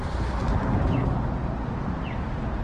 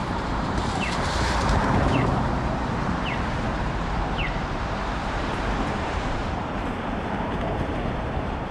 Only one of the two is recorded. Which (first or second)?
first